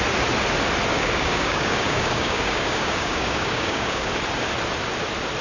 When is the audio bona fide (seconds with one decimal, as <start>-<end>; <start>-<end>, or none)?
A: 0.0-0.9; 4.1-5.4